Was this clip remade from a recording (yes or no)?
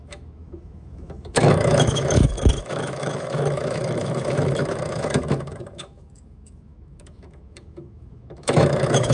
yes